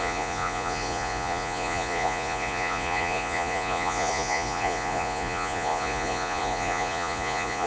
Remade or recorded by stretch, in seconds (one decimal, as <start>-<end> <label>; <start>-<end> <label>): 0.0-7.7 remade